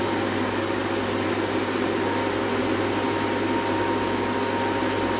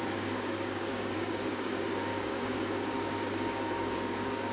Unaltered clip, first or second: first